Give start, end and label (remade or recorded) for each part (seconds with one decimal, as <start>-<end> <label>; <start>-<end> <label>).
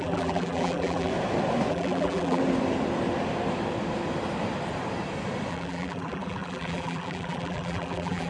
0.0-1.1 remade; 1.1-1.7 recorded; 1.7-2.4 remade; 2.4-5.5 recorded; 5.5-8.3 remade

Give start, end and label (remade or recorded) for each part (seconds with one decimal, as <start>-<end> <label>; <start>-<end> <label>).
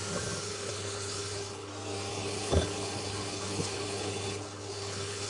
0.0-0.4 recorded; 0.4-1.7 remade; 1.7-2.1 recorded; 2.1-5.3 remade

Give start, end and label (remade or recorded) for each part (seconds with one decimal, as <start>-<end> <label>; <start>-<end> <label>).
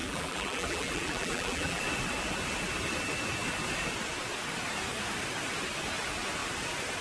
0.0-1.8 remade; 1.8-7.0 recorded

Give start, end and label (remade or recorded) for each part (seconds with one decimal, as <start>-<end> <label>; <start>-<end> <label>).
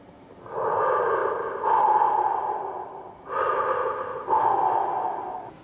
0.0-5.6 recorded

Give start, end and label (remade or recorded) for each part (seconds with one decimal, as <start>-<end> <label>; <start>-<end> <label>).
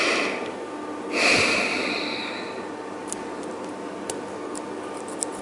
0.0-3.0 recorded; 3.0-3.5 remade; 3.5-5.4 recorded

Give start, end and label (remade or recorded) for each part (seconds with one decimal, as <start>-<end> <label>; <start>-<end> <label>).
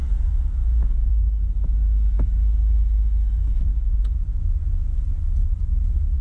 0.0-1.1 remade; 1.1-3.7 recorded; 3.7-4.3 remade; 4.3-6.2 recorded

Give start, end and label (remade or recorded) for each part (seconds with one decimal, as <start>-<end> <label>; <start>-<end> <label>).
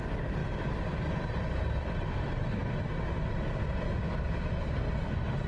0.0-5.5 recorded